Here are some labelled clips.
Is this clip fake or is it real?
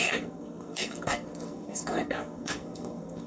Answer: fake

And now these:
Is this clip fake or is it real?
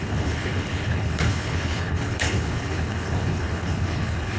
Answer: fake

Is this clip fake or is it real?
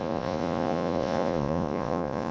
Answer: fake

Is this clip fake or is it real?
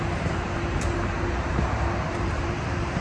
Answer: fake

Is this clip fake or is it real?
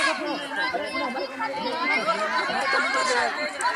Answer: real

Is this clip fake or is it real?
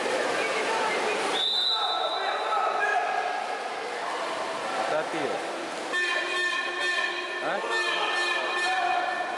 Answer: real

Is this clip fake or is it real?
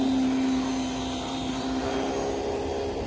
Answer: real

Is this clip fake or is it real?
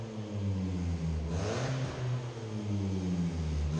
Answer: real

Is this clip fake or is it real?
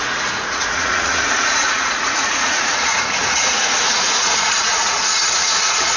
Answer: fake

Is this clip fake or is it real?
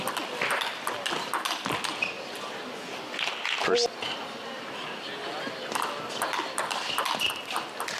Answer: real